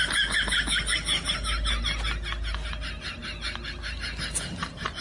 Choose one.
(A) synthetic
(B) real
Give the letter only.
B